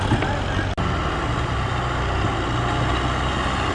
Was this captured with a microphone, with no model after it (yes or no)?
yes